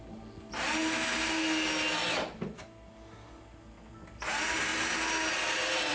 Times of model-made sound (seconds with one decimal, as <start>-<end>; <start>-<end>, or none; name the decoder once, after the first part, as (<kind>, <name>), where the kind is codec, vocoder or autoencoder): none